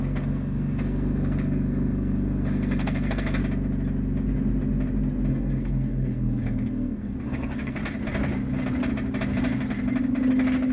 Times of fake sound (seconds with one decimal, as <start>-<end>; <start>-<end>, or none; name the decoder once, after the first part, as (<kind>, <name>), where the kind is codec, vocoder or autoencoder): 0.0-3.4 (codec, SNAC); 5.3-7.8

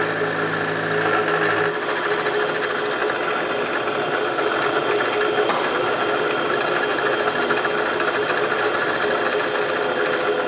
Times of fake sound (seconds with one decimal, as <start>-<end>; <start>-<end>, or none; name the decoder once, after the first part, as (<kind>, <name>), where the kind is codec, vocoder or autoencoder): none

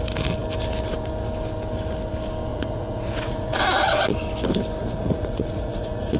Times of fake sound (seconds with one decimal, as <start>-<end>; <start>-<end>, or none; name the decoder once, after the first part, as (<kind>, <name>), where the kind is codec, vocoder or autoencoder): 2.5-3.6 (vocoder, Vocos); 4.8-6.2

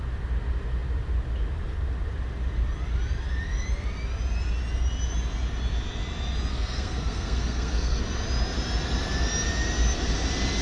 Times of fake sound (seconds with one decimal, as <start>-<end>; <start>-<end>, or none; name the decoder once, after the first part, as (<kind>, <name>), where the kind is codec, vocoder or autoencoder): 6.5-8.0 (codec, SNAC)

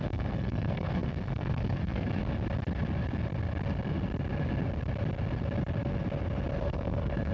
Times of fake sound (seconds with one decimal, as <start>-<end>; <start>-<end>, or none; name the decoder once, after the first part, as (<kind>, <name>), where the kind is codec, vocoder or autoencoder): 0.0-2.2 (codec, SNAC); 6.6-7.3

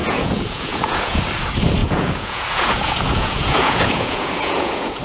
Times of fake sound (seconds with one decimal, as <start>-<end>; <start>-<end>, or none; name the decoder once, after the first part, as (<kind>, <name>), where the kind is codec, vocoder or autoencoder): 0.0-1.2 (vocoder, Vocos); 1.8-5.0

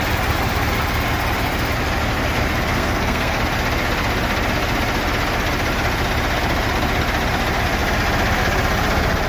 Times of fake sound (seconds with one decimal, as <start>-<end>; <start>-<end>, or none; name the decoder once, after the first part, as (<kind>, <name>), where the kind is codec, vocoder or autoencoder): 2.7-3.4 (codec, SNAC)

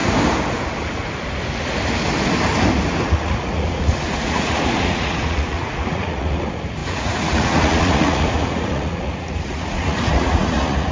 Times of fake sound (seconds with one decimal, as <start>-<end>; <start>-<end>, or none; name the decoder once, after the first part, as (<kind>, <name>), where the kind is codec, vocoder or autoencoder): 3.0-10.9 (vocoder, Vocos)